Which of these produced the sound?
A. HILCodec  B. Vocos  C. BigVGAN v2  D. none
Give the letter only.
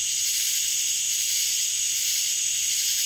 C